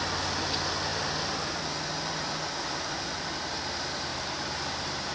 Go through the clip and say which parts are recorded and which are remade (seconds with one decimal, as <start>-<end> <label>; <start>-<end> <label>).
0.0-4.1 recorded; 4.1-5.1 remade

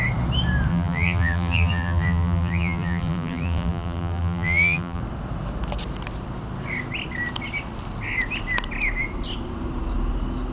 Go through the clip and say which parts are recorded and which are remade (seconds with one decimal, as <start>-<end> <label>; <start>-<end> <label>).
0.0-0.7 recorded; 0.7-5.0 remade; 5.0-10.5 recorded

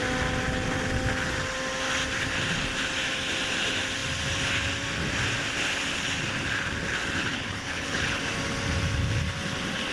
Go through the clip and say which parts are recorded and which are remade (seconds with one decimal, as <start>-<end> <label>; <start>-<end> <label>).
0.0-7.3 recorded; 7.3-8.2 remade; 8.2-9.9 recorded

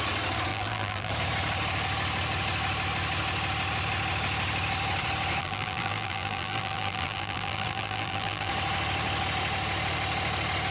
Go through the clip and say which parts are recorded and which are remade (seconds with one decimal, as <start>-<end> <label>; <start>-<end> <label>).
0.0-0.5 recorded; 0.5-1.1 remade; 1.1-5.4 recorded; 5.4-8.5 remade; 8.5-10.7 recorded